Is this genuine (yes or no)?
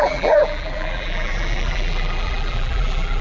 no